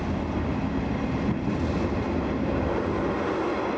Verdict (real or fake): real